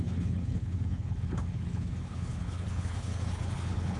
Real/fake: fake